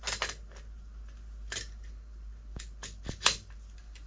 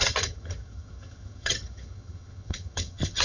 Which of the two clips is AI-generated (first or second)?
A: second